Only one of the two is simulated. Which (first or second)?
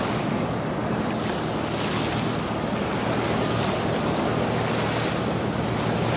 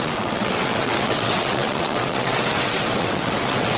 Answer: second